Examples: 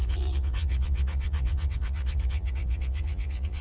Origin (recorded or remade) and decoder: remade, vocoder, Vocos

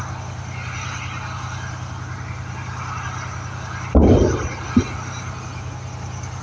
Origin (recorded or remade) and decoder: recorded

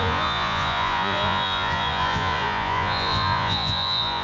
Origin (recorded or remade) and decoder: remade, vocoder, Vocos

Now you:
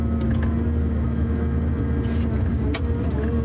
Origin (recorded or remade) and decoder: recorded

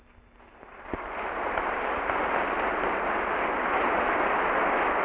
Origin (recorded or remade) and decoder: recorded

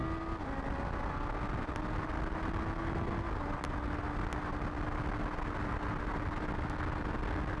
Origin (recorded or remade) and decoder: recorded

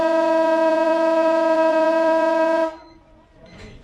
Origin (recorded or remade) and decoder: remade, vocoder, Vocos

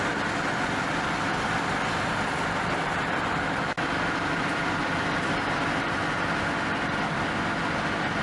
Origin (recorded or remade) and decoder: recorded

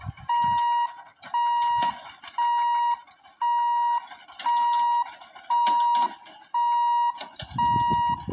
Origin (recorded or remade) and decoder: recorded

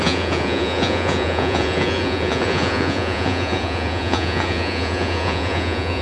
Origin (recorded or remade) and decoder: remade, vocoder, Vocos